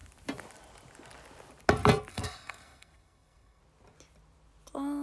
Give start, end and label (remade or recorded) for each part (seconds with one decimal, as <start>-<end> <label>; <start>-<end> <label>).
0.0-2.1 recorded; 2.1-3.6 remade; 3.6-5.0 recorded

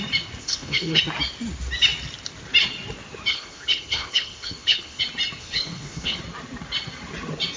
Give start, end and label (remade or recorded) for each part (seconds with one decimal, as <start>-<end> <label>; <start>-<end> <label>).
0.0-0.4 recorded; 0.4-1.0 remade; 1.0-3.3 recorded; 3.3-5.0 remade; 5.0-5.4 recorded; 5.4-6.2 remade; 6.2-7.6 recorded

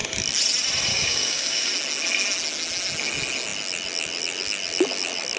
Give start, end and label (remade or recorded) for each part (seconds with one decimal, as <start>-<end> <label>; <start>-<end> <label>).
0.0-0.9 recorded; 0.9-1.7 remade; 1.7-5.4 recorded

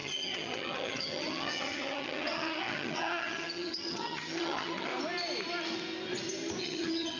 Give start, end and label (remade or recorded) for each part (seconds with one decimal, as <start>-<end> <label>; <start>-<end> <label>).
0.0-4.9 remade; 4.9-6.6 recorded; 6.6-7.2 remade

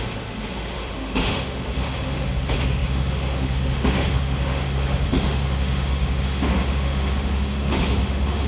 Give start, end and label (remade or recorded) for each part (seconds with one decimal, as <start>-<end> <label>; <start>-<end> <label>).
0.0-8.5 remade

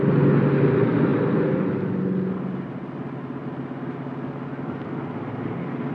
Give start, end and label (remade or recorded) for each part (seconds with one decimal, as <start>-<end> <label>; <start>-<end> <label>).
0.0-5.9 recorded

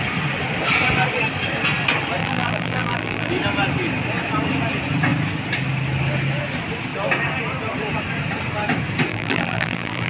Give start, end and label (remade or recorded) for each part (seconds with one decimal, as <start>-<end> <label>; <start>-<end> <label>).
0.0-2.2 recorded; 2.2-3.3 remade; 3.3-9.1 recorded; 9.1-10.1 remade